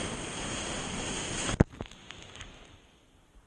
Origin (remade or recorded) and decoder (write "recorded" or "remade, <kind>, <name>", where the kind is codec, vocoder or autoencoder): recorded